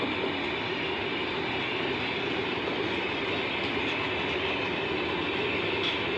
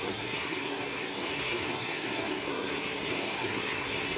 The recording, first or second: first